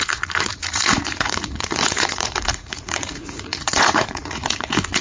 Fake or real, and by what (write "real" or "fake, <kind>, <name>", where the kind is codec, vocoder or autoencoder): fake, vocoder, Vocos